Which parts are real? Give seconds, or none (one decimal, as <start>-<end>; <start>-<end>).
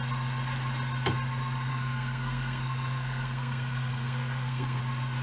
0.0-1.7; 4.8-5.2